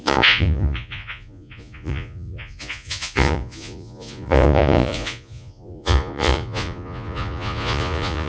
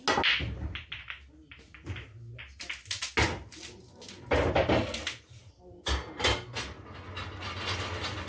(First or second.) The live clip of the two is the second